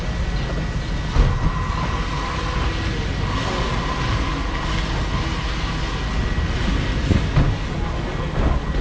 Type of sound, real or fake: real